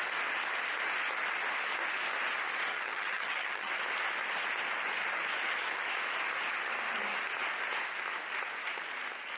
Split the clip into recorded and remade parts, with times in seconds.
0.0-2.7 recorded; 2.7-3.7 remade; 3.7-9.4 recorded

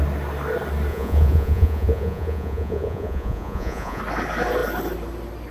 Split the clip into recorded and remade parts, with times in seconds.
0.0-0.9 recorded; 0.9-4.0 remade; 4.0-5.5 recorded

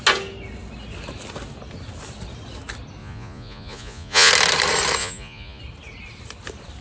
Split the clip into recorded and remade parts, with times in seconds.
0.0-3.0 recorded; 3.0-4.3 remade; 4.3-5.0 recorded; 5.0-5.6 remade; 5.6-6.8 recorded

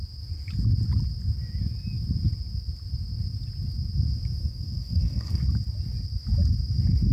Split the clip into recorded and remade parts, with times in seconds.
0.0-4.4 recorded; 4.4-5.4 remade; 5.4-7.1 recorded

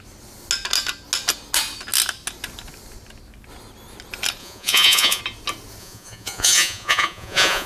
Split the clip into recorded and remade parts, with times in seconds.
0.0-4.4 recorded; 4.4-5.2 remade; 5.2-5.8 recorded; 5.8-7.7 remade

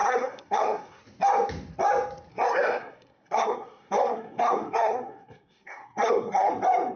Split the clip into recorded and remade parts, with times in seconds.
0.0-1.0 remade; 1.0-2.3 recorded; 2.3-6.5 remade; 6.5-7.0 recorded